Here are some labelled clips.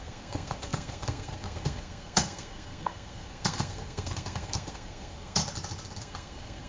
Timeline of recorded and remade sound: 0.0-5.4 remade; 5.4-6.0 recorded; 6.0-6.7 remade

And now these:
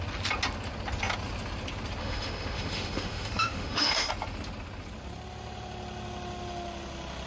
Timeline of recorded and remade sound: 0.0-2.0 recorded; 2.0-4.1 remade; 4.1-7.3 recorded